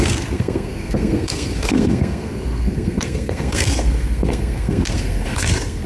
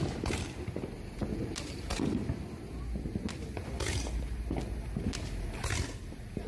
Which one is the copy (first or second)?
first